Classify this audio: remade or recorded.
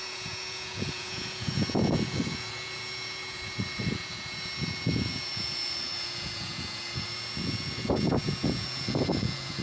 remade